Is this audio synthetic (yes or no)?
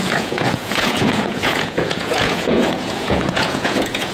yes